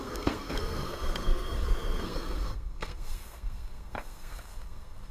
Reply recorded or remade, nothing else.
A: remade